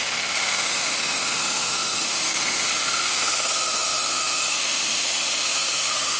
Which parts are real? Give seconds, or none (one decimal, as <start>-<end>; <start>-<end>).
none